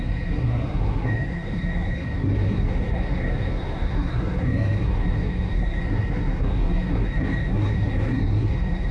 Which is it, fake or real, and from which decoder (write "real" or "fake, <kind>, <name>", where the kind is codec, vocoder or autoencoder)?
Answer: fake, codec, SNAC